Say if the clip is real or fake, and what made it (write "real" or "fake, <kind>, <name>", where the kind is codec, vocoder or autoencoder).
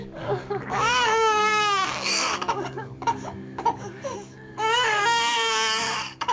fake, codec, DAC